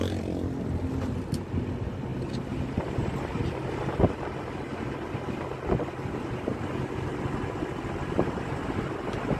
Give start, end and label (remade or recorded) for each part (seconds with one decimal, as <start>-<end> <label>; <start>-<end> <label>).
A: 0.0-9.4 recorded